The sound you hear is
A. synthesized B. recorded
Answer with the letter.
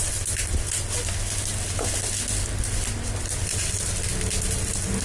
B